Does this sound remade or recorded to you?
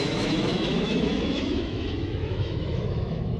remade